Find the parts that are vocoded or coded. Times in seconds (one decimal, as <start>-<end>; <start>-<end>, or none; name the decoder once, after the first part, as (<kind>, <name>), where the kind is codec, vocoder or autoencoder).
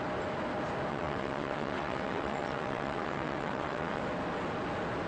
0.9-4.0 (vocoder, WaveNeXt)